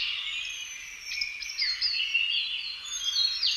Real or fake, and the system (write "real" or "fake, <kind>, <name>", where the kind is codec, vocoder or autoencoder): fake, vocoder, BigVGAN v2